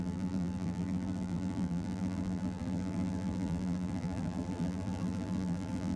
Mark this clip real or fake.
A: fake